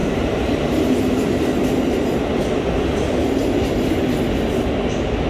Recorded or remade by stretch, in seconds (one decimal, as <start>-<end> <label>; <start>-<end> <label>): 0.0-1.0 remade; 1.0-5.3 recorded